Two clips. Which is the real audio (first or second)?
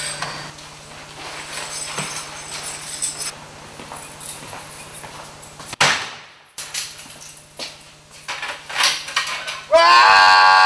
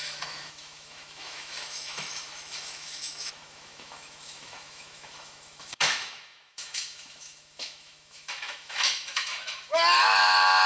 first